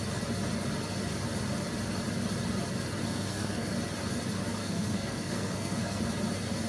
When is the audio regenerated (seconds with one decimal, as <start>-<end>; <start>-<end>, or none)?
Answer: 3.1-3.7; 4.6-6.0